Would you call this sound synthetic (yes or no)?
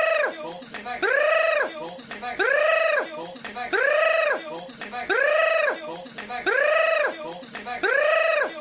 no